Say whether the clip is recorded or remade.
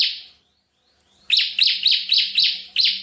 recorded